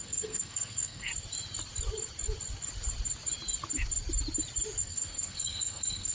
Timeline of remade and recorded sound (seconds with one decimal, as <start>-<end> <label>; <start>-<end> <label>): 0.0-1.1 remade; 1.1-4.8 recorded; 4.8-6.1 remade